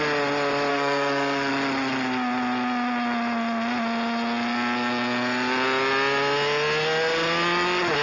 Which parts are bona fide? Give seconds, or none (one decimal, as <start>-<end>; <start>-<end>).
0.0-0.7; 1.5-8.0